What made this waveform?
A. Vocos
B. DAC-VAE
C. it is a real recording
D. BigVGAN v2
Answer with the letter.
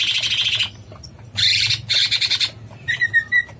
C